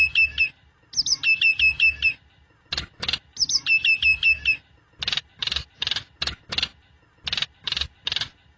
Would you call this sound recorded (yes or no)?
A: yes